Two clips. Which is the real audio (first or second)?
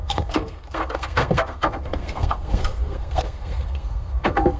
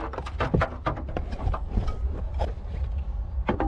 second